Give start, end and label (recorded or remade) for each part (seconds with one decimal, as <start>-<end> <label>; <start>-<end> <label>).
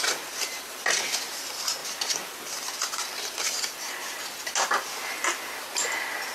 0.0-6.3 recorded